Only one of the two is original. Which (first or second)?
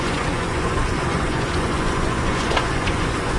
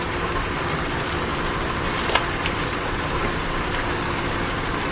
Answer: second